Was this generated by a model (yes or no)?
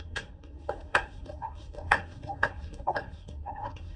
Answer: yes